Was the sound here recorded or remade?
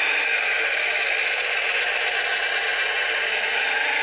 recorded